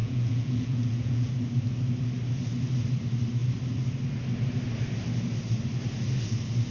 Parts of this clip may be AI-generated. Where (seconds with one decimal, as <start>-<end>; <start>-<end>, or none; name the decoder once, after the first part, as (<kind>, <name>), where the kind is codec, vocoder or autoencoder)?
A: 0.0-1.3 (vocoder, Vocos)